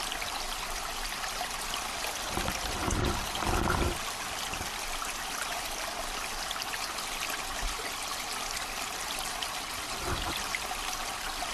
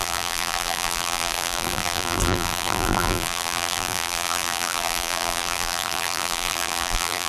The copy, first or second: second